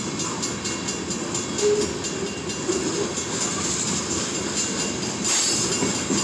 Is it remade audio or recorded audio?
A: recorded